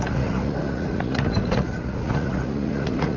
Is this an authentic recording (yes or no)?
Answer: no